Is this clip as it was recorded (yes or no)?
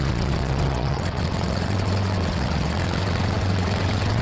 no